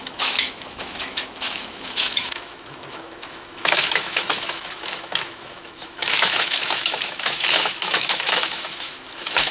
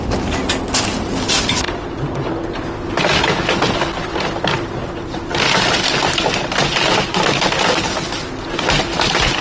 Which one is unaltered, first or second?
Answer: second